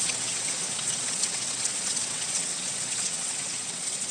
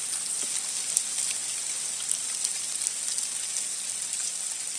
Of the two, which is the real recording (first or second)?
second